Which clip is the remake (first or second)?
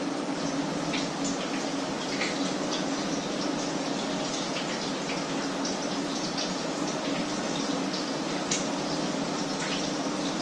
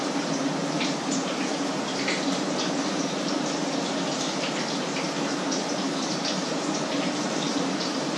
second